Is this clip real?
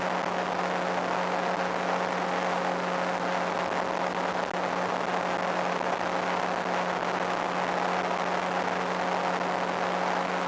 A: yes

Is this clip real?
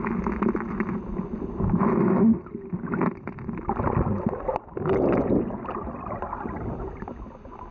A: yes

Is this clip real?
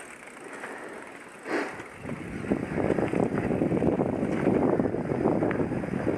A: yes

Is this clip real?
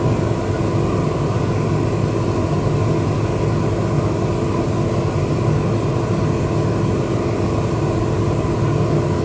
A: yes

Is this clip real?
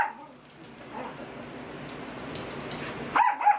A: no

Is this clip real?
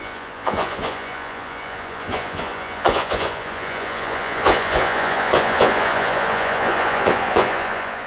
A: no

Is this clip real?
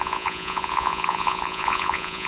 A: no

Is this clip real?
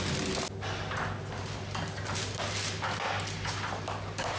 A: yes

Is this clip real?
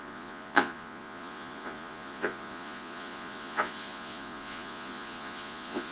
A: no